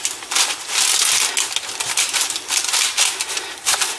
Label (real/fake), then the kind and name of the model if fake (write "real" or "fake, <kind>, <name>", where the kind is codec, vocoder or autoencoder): real